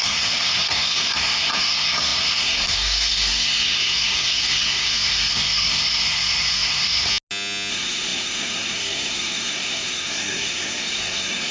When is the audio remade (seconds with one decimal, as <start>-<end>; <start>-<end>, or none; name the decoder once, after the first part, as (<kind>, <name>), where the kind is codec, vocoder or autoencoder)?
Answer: 0.0-7.1 (codec, SNAC); 7.7-11.5